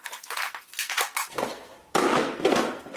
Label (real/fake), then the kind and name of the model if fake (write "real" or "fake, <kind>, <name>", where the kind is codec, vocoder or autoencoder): fake, codec, SNAC